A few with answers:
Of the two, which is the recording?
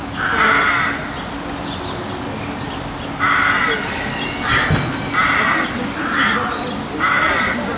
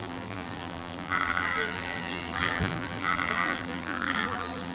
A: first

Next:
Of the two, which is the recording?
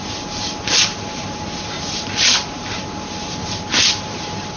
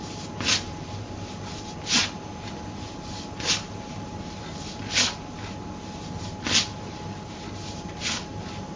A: second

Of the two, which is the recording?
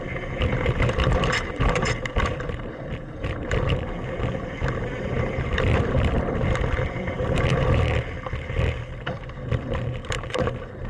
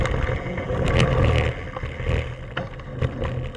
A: second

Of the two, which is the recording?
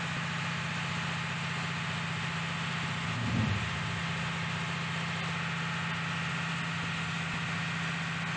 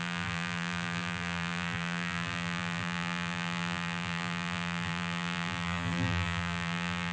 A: first